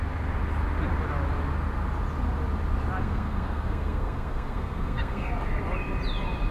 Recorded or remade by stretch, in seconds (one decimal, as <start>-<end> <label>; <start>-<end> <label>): 0.0-3.0 recorded; 3.0-5.3 remade; 5.3-6.5 recorded